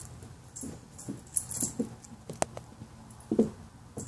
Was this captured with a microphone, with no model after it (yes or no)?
yes